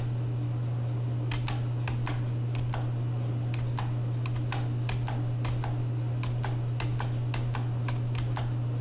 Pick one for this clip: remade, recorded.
recorded